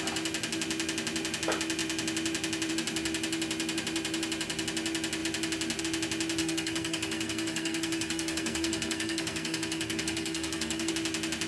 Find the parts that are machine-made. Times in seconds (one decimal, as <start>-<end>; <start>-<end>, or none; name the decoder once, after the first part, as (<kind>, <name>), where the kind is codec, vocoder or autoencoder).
6.4-10.9 (codec, SNAC)

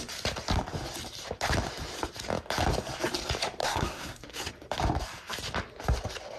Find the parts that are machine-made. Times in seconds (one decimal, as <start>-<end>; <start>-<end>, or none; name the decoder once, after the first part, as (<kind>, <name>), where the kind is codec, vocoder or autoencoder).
3.6-4.5 (codec, SNAC)

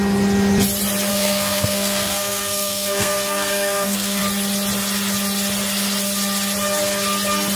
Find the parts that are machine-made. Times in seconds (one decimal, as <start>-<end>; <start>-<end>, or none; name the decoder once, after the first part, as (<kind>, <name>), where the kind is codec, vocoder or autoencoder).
1.1-4.2 (codec, SNAC)

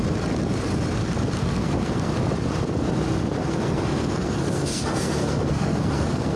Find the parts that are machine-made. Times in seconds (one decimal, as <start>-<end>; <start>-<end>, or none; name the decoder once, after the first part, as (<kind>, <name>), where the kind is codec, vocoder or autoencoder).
1.4-2.1 (codec, SNAC); 3.4-6.4